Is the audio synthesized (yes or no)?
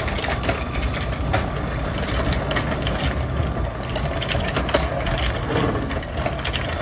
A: no